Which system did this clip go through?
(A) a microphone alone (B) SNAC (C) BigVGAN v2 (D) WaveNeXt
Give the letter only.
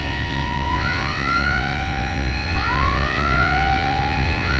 D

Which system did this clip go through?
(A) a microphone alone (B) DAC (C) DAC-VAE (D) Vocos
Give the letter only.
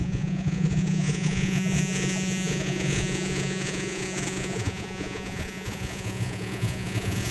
D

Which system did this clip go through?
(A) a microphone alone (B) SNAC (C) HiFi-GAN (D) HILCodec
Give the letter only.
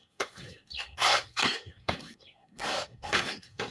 B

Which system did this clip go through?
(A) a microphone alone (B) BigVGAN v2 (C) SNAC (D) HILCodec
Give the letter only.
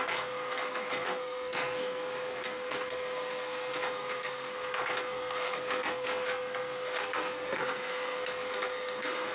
C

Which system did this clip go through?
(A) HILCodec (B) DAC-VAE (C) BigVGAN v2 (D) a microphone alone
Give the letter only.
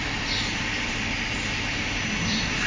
C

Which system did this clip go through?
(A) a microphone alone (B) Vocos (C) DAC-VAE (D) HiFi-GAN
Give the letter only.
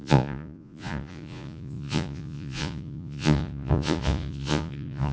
B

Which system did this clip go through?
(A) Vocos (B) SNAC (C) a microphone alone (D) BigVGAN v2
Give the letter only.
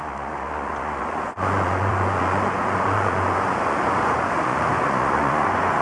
A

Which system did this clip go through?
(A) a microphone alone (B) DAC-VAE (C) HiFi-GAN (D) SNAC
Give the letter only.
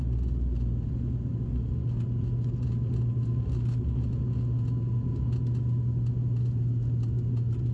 A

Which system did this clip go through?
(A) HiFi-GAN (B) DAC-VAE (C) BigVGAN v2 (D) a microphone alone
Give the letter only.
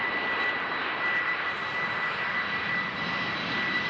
C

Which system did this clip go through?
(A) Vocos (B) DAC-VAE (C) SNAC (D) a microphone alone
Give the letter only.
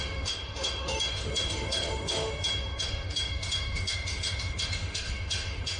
B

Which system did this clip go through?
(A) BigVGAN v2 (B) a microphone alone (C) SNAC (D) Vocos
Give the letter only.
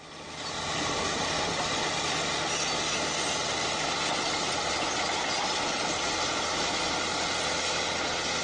B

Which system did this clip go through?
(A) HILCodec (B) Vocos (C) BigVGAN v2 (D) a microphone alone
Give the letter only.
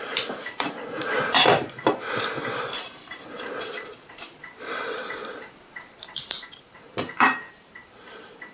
C